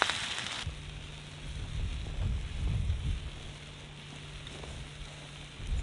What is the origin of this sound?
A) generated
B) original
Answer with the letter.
B